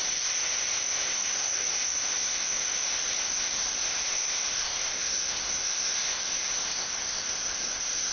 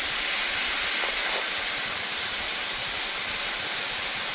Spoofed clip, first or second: first